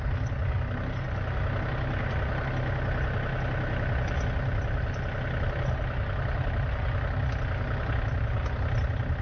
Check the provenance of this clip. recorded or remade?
recorded